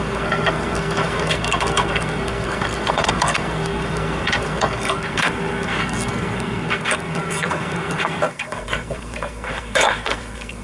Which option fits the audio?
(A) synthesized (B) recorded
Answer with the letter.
A